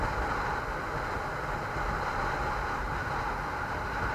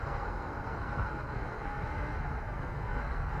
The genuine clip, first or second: first